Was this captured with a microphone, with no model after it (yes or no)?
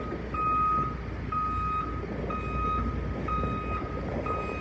yes